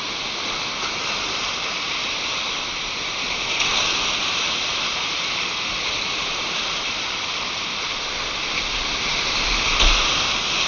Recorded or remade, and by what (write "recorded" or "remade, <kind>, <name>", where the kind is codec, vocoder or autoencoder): recorded